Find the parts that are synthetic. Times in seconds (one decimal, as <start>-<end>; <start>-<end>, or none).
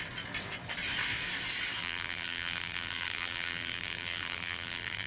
1.8-5.1